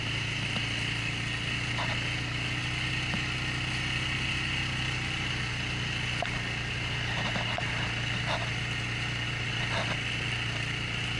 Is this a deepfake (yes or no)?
no